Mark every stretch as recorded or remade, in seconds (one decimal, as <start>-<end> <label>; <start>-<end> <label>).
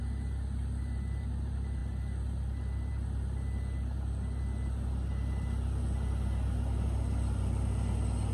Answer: 0.0-8.3 recorded